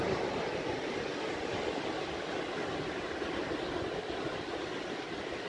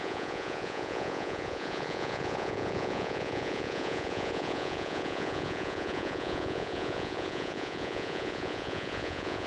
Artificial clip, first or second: second